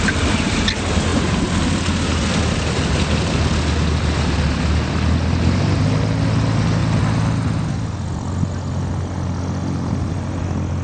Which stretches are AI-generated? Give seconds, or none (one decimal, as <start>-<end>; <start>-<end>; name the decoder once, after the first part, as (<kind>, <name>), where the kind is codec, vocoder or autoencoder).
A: none